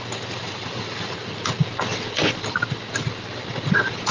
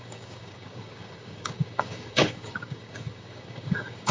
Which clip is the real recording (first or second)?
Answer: first